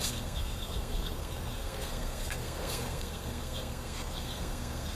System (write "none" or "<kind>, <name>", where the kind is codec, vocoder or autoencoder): codec, SNAC